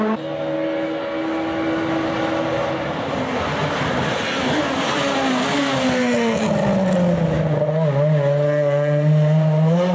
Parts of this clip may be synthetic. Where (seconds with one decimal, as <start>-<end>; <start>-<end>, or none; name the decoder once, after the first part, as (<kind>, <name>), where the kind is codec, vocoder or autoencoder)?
none